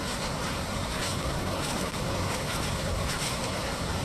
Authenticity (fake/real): fake